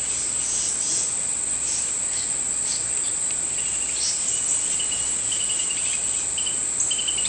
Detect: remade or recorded recorded